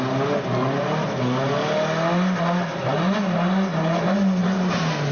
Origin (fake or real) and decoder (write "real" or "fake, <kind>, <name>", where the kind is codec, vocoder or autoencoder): real